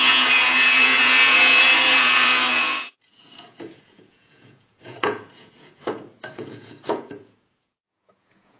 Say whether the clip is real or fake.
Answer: fake